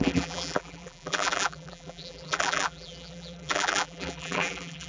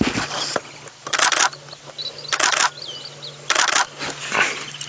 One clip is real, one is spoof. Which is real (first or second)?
second